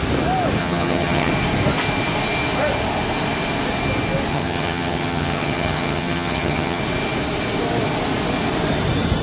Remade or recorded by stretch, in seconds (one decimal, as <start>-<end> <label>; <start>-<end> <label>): 0.0-0.6 recorded; 0.6-1.3 remade; 1.3-4.3 recorded; 4.3-6.8 remade; 6.8-9.2 recorded